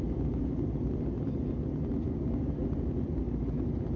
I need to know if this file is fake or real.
real